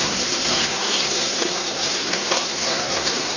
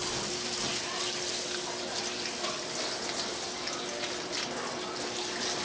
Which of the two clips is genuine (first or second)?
second